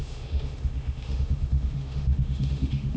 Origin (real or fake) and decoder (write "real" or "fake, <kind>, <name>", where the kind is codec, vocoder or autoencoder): fake, autoencoder, DAC-VAE